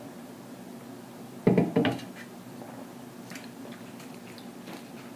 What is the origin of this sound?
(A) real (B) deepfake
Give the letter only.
A